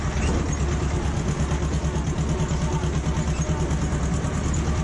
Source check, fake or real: real